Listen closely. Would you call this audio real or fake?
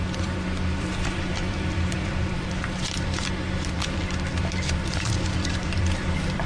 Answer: fake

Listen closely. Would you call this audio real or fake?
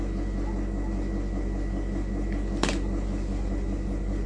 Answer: real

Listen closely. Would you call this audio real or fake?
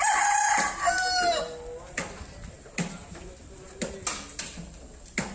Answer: real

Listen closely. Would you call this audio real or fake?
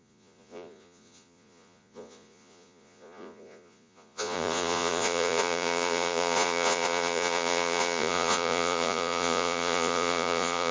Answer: fake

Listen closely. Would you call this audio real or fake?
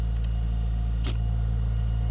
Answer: real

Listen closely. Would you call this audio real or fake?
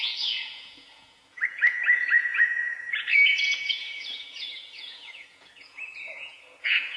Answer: fake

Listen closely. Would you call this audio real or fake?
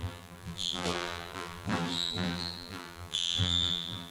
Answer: fake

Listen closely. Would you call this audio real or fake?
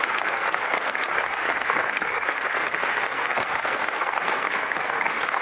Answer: fake